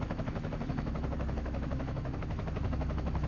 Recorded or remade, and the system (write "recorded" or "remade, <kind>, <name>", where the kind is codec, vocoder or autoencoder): remade, autoencoder, DAC-VAE